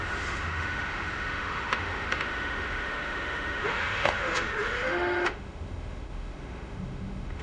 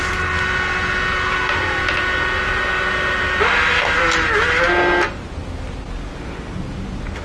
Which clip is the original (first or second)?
second